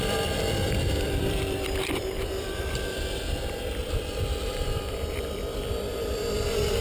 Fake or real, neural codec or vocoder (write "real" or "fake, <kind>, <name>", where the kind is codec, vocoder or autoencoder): fake, vocoder, BigVGAN v2